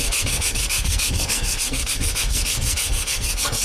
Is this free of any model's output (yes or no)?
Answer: no